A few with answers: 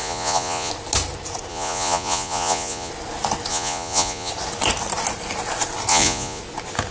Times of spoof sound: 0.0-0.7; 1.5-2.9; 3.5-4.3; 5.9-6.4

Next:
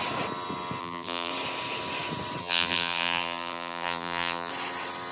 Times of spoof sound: 0.8-1.3; 2.4-4.5

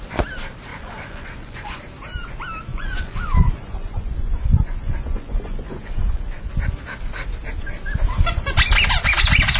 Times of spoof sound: 0.7-1.8; 2.7-6.5

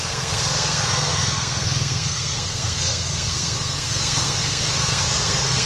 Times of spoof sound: 0.0-5.7

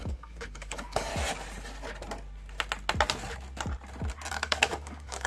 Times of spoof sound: 0.0-1.1; 4.3-5.3

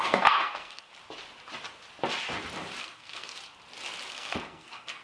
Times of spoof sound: 0.0-0.9; 2.8-3.3; 4.1-5.0